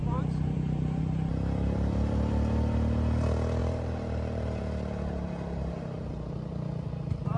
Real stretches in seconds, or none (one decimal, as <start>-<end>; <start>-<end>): 1.0-3.6; 4.6-6.1